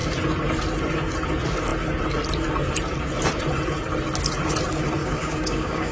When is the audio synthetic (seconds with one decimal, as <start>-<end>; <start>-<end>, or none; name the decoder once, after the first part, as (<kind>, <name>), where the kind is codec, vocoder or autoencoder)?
5.0-5.9 (codec, DAC)